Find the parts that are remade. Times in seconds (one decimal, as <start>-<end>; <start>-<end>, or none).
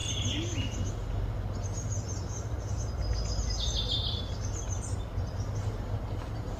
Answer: none